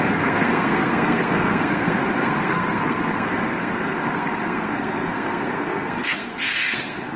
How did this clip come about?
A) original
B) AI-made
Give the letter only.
B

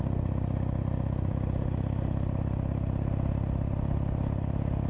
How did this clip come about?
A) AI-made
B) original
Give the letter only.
B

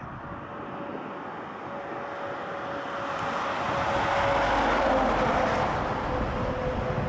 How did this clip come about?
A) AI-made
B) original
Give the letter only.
B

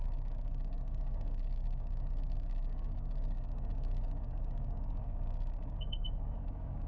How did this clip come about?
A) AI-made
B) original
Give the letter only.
A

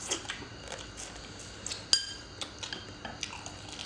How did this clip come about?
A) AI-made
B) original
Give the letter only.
B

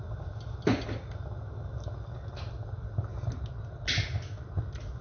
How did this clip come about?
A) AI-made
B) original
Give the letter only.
B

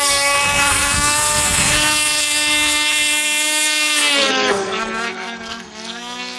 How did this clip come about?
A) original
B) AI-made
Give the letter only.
B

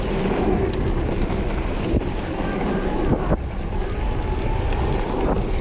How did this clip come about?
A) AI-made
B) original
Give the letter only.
B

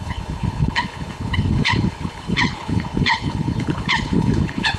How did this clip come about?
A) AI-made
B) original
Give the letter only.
A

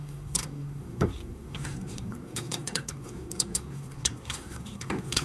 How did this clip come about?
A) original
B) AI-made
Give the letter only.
B